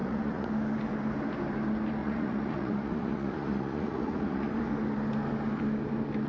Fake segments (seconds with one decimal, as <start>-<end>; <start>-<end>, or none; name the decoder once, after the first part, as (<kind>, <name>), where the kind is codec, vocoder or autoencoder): 0.0-0.5 (vocoder, Vocos); 2.0-4.5